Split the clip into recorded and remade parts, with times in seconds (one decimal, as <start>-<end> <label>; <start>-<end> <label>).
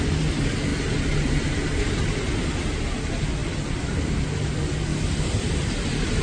0.0-3.4 recorded; 3.4-4.2 remade; 4.2-4.9 recorded; 4.9-5.5 remade; 5.5-6.2 recorded